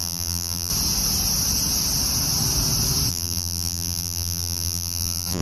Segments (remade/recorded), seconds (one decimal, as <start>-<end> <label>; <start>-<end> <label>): 0.0-0.7 remade; 0.7-3.1 recorded; 3.1-5.4 remade